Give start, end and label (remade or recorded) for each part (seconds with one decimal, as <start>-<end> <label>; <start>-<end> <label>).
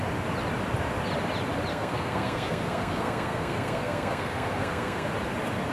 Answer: 0.0-1.7 recorded; 1.7-5.1 remade; 5.1-5.7 recorded